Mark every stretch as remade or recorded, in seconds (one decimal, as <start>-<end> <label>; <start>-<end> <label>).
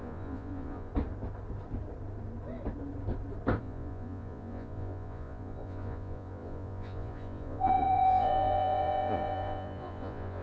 0.0-0.9 remade; 0.9-3.6 recorded; 3.6-10.4 remade